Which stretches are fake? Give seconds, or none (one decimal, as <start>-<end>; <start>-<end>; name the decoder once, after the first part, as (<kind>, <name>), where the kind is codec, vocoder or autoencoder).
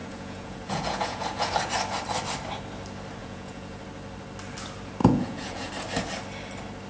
0.0-1.5 (vocoder, Vocos); 3.2-3.8; 5.0-5.7